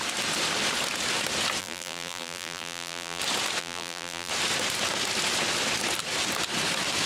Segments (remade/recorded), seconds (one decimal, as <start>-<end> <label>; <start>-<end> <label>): 0.0-1.6 recorded; 1.6-3.2 remade; 3.2-3.6 recorded; 3.6-4.3 remade; 4.3-7.1 recorded